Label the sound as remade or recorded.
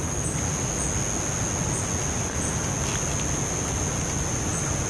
recorded